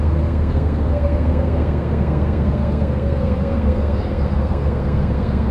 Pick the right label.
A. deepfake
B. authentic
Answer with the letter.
A